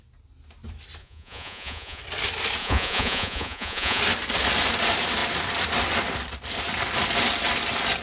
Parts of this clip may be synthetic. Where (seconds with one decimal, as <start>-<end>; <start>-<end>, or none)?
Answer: 1.0-2.0; 2.6-4.0